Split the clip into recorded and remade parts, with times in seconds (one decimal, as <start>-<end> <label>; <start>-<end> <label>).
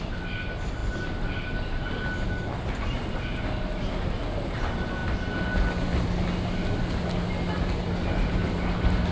0.0-9.1 recorded